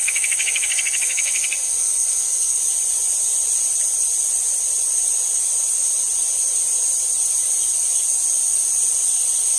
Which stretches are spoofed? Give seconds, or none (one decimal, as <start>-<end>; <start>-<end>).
0.0-2.6